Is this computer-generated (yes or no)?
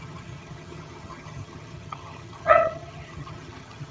yes